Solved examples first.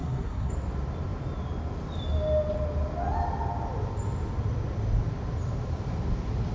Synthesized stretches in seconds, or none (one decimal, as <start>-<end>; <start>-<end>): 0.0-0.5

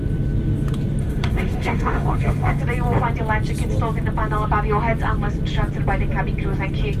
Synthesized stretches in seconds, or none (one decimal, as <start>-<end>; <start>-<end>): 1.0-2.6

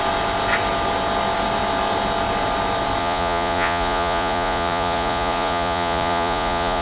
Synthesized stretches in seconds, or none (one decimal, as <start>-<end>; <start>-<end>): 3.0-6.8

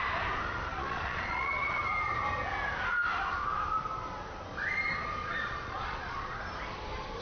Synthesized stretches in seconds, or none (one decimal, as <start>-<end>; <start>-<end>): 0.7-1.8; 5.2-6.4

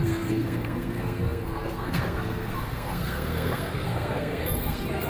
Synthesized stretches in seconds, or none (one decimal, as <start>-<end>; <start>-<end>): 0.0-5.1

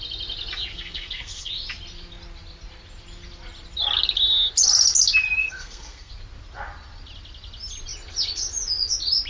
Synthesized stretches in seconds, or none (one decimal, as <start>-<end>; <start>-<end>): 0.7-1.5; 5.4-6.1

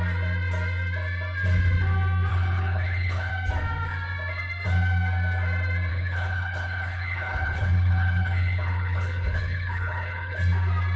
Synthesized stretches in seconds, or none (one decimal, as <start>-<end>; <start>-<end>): 2.3-3.3; 5.9-10.4